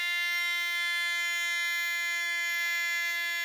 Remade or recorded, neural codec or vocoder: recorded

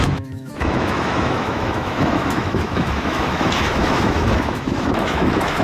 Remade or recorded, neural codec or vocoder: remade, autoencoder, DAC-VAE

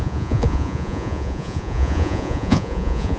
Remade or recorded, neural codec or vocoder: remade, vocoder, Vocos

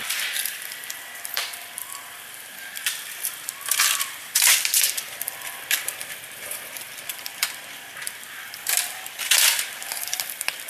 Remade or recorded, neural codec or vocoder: remade, vocoder, BigVGAN v2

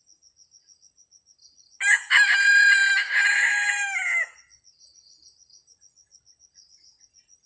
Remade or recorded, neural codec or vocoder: recorded